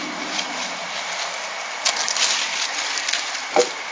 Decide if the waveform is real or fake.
real